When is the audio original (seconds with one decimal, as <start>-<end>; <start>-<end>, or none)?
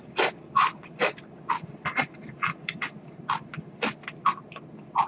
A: 0.0-5.1